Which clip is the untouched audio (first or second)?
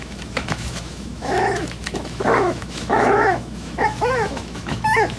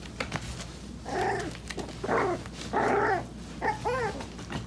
second